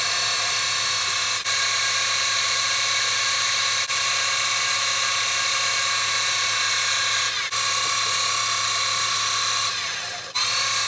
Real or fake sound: real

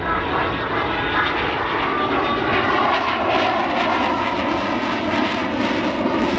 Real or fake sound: real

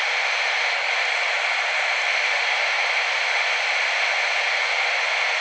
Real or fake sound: real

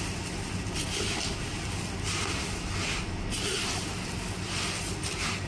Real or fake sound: real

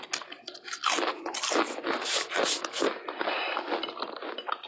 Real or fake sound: real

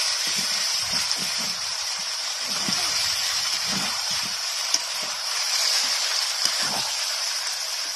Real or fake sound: fake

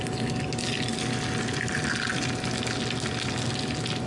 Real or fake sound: real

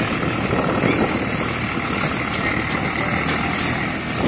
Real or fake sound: real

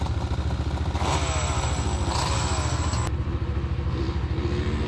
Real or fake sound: real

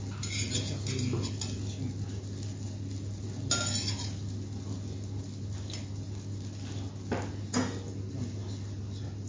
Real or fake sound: real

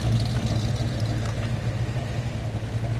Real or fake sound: real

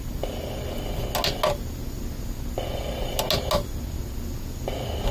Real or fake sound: real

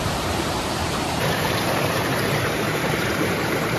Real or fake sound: fake